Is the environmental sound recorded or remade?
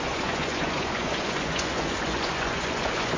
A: remade